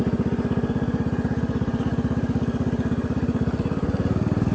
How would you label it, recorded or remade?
recorded